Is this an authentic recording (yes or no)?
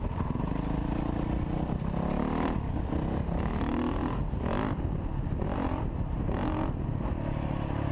yes